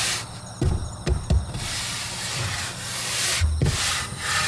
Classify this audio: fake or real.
real